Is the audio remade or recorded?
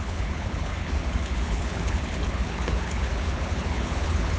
remade